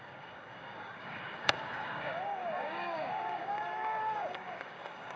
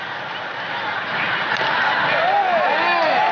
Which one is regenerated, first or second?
first